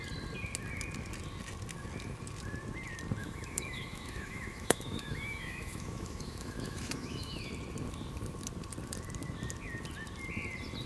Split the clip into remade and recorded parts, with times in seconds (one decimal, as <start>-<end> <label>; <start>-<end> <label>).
0.0-3.2 recorded; 3.2-7.5 remade; 7.5-10.9 recorded